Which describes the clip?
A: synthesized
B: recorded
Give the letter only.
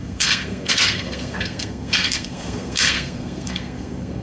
A